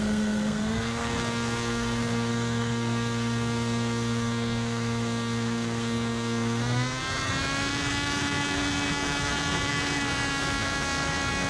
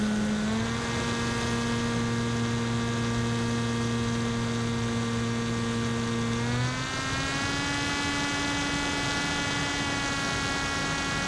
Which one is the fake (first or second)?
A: first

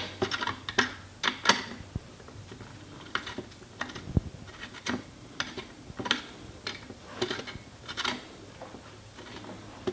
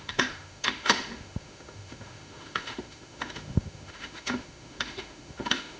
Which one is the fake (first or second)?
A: second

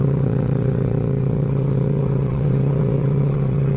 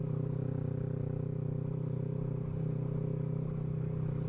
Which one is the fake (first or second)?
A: first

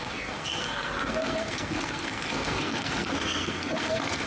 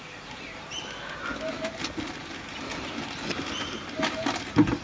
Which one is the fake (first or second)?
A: first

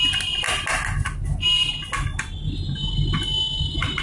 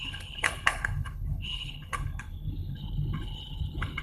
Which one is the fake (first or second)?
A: second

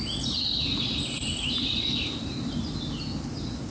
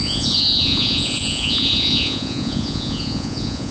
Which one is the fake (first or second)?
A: second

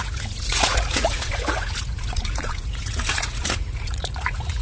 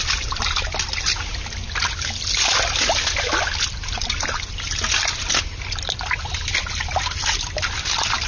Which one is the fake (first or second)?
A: first